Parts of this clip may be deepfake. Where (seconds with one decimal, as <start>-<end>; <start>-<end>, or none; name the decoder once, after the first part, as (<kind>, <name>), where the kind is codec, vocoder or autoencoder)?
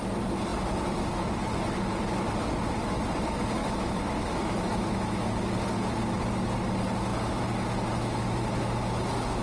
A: 3.6-5.3 (autoencoder, DAC-VAE)